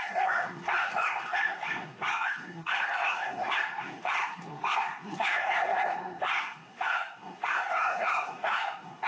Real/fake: fake